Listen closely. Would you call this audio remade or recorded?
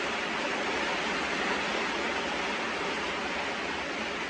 recorded